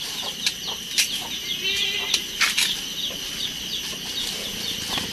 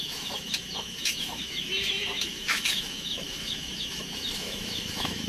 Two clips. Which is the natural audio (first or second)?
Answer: first